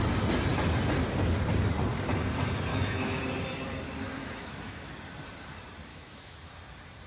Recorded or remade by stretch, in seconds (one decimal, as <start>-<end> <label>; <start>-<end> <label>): 0.0-2.7 recorded; 2.7-3.2 remade; 3.2-4.2 recorded; 4.2-4.9 remade; 4.9-5.9 recorded; 5.9-6.5 remade; 6.5-7.1 recorded